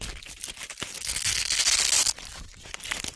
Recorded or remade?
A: recorded